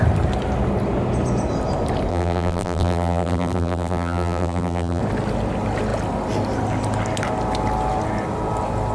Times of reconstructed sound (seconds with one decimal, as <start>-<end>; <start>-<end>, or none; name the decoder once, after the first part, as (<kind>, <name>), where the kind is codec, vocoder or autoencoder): 2.1-5.0 (vocoder, BigVGAN v2)